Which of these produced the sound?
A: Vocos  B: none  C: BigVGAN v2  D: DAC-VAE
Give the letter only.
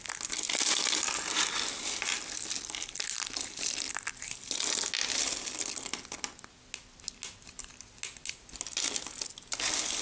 B